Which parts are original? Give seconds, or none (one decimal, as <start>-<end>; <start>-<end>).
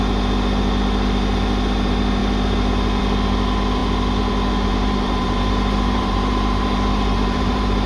0.0-4.7